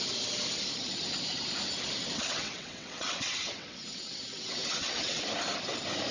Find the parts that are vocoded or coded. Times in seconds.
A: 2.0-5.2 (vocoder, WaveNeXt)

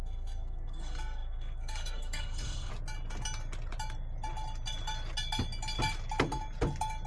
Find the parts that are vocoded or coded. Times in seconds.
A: 0.0-2.7 (codec, SNAC)

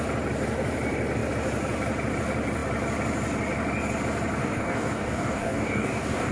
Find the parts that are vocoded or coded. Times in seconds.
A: 4.4-6.3 (codec, DAC)

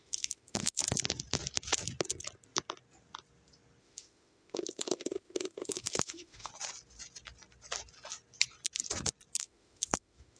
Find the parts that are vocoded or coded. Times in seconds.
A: 0.0-0.8 (autoencoder, DAC-VAE); 3.8-6.5; 9.4-10.4